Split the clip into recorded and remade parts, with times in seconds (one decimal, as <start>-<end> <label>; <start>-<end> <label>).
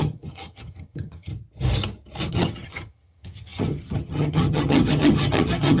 0.0-1.3 remade; 1.3-2.3 recorded; 2.3-5.8 remade